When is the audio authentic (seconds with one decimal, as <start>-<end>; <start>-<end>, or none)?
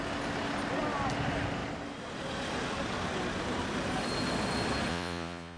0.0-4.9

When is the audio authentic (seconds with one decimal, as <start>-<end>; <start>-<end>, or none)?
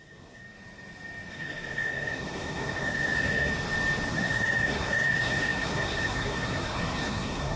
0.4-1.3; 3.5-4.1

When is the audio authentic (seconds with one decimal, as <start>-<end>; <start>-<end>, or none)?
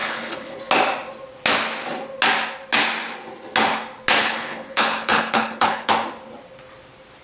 0.6-4.2; 5.9-7.2